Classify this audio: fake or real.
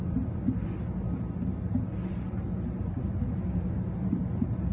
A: real